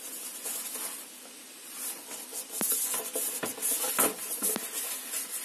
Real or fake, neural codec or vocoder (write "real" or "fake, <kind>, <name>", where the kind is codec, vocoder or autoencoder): real